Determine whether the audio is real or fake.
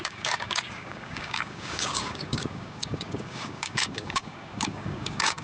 fake